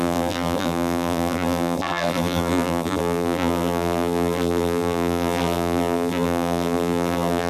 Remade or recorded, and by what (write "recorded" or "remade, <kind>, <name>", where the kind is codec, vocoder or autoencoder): remade, vocoder, BigVGAN v2